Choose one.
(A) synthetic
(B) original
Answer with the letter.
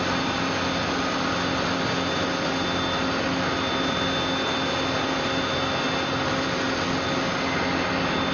B